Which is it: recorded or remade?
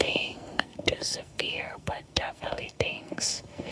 remade